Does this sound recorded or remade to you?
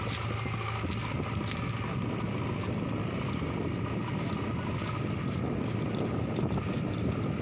recorded